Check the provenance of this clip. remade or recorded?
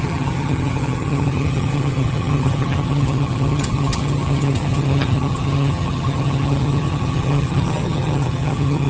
remade